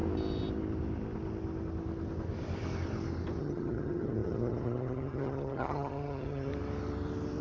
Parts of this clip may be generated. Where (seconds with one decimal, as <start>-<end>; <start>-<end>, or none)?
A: 3.4-6.5

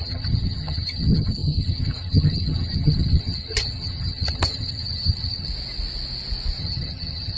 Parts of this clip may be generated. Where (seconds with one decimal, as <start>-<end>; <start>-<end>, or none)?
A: 0.0-5.5; 6.6-7.4

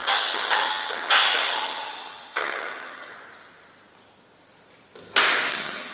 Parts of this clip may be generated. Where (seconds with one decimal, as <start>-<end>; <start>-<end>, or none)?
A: 0.0-3.1; 5.5-5.9

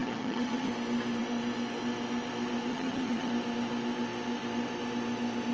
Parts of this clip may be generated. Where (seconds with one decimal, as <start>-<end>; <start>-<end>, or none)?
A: 0.0-0.7; 2.7-3.3

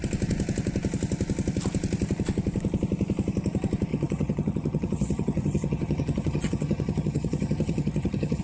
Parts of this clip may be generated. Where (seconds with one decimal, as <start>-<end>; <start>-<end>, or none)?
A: 3.9-8.4